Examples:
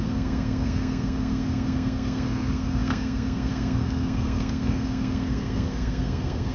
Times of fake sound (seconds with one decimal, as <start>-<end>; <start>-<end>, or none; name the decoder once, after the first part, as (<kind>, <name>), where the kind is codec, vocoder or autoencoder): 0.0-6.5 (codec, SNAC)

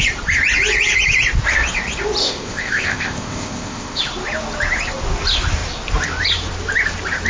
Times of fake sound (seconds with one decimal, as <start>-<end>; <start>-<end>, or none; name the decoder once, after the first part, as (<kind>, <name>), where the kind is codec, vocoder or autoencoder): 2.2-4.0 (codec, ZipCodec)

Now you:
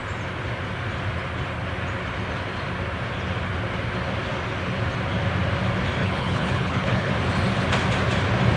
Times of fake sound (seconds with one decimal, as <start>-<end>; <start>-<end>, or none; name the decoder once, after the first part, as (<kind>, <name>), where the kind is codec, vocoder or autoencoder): 6.0-7.1 (codec, HILCodec)

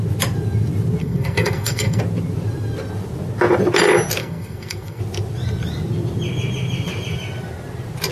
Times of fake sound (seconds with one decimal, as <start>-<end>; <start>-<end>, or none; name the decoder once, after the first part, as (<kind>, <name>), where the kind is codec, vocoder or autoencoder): 1.0-2.0 (codec, SNAC); 4.2-5.0

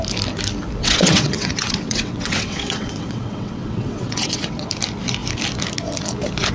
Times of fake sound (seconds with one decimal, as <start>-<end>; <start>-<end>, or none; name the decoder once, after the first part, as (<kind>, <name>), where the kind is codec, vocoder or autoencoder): 0.8-4.7 (vocoder, WaveNeXt)

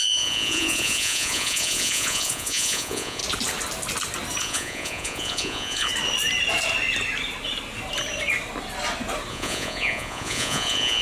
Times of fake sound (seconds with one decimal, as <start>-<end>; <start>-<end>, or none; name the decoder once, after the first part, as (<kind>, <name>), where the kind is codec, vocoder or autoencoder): 0.0-3.2 (vocoder, Vocos); 4.4-5.9; 9.3-11.0

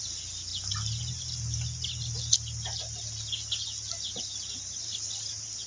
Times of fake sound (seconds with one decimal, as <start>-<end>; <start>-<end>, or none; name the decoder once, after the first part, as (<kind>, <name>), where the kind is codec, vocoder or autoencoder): none